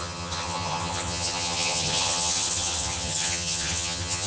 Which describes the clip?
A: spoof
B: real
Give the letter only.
A